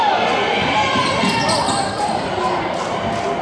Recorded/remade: recorded